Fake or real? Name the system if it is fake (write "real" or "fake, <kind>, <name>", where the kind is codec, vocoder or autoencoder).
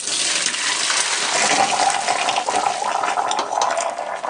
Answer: real